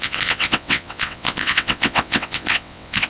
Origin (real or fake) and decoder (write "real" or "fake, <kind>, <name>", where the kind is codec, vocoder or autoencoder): fake, vocoder, WaveNeXt